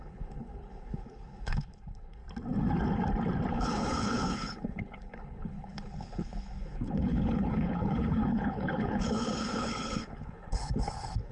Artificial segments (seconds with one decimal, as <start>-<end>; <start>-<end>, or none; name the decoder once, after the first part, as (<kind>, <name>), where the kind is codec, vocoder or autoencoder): 0.0-2.2 (codec, HILCodec); 3.5-11.3